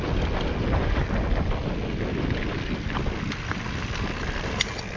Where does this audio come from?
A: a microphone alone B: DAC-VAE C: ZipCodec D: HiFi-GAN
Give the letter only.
A